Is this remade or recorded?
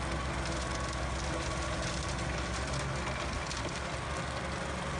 recorded